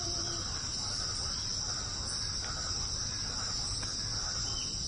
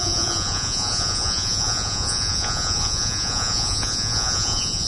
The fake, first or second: second